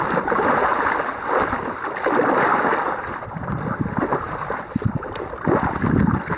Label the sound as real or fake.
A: real